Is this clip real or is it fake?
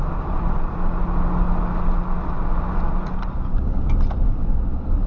real